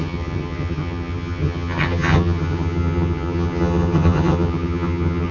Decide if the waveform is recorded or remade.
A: remade